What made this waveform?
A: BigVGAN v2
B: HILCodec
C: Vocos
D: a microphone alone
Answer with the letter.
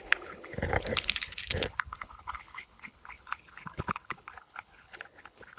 B